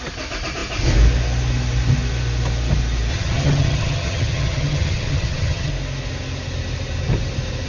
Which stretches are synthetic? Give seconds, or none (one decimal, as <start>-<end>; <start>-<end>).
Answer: 3.1-5.7